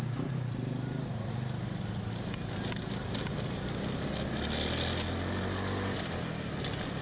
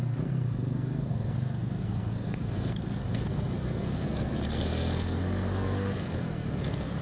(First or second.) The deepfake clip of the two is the second